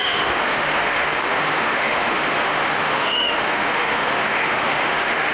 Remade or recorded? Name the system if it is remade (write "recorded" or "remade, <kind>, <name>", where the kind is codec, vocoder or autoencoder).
remade, autoencoder, DAC-VAE